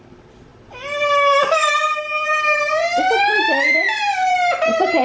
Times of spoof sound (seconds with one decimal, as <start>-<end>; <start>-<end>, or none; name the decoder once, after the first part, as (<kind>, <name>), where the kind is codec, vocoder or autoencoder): 2.1-5.0 (vocoder, BigVGAN v2)